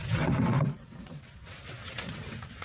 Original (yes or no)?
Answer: no